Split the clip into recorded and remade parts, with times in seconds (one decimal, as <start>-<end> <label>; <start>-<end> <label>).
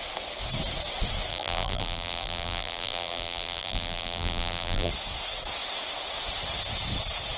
0.0-1.3 recorded; 1.3-4.9 remade; 4.9-7.4 recorded